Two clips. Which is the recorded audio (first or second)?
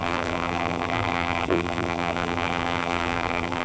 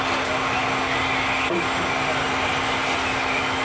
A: second